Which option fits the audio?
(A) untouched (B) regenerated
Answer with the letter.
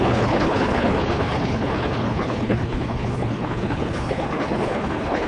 B